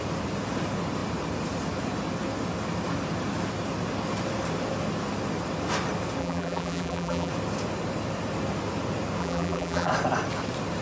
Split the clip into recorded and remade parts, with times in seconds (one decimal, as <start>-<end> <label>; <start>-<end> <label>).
0.0-6.2 recorded; 6.2-7.3 remade; 7.3-9.2 recorded; 9.2-9.9 remade; 9.9-10.8 recorded